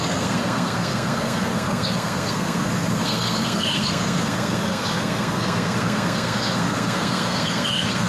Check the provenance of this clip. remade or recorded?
remade